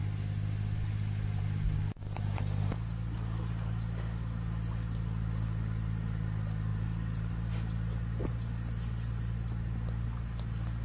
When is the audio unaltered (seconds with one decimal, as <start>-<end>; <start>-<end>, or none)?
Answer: 0.0-6.7; 7.3-10.8